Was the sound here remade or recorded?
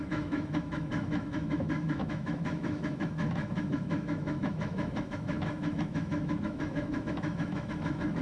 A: remade